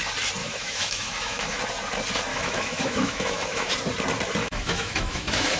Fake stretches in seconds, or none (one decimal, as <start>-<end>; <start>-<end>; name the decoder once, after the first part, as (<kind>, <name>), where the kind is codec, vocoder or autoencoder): 0.4-1.6 (autoencoder, DAC-VAE); 2.3-3.7; 4.4-5.6